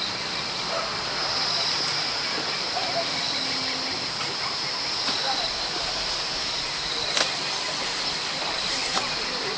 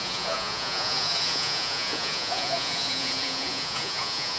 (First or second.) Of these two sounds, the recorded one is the first